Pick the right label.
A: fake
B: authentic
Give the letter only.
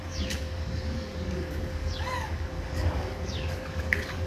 A